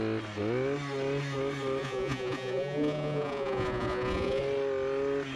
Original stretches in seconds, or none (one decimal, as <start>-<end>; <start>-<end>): 0.0-1.8; 4.4-5.4